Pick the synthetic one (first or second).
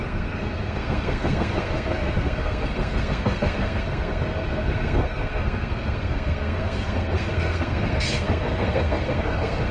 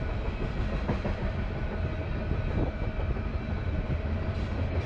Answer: first